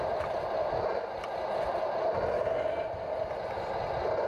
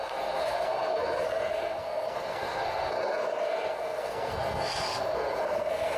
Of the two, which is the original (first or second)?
first